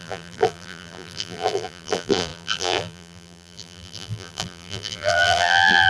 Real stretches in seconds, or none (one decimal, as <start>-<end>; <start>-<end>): none